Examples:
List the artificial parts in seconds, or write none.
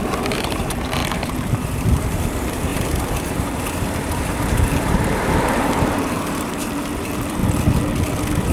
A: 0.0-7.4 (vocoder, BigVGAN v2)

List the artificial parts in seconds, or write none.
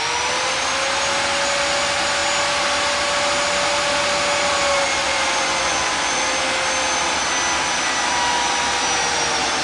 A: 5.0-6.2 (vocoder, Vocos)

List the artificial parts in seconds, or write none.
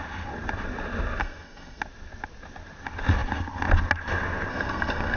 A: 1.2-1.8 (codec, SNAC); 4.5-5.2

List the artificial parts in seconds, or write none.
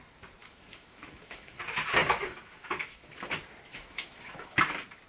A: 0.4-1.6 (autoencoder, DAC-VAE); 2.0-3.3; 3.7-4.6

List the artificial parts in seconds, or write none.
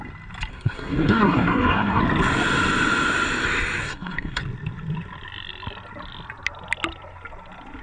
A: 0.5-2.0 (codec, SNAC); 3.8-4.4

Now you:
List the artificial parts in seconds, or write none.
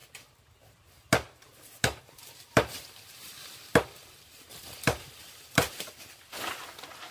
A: 2.0-7.1 (vocoder, BigVGAN v2)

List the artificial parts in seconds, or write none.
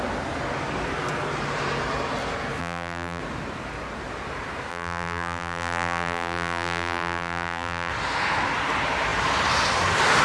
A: 2.6-3.2 (vocoder, BigVGAN v2); 4.7-7.9